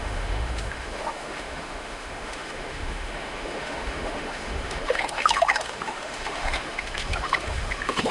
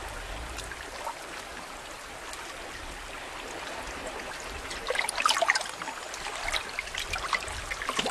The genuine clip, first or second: second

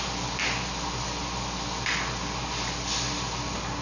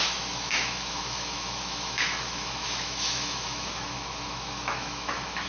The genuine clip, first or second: first